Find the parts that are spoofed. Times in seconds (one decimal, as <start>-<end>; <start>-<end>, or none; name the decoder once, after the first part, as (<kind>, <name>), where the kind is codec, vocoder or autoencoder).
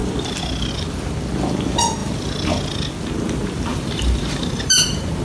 3.7-5.2 (vocoder, BigVGAN v2)